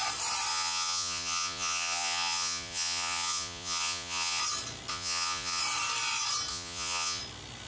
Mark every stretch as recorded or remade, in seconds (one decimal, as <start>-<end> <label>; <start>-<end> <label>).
0.0-0.5 recorded; 0.5-4.4 remade; 4.4-4.9 recorded; 4.9-5.6 remade; 5.6-6.5 recorded; 6.5-7.2 remade; 7.2-7.7 recorded